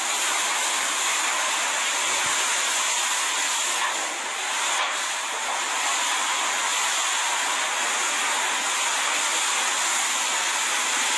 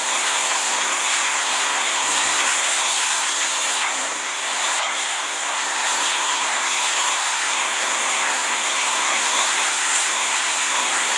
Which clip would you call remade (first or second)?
second